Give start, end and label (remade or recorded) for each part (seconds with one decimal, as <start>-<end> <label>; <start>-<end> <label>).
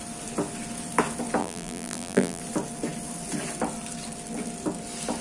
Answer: 0.0-1.4 recorded; 1.4-2.4 remade; 2.4-5.2 recorded